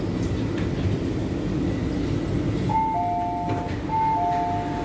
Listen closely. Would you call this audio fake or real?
real